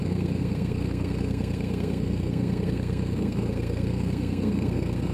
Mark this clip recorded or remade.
remade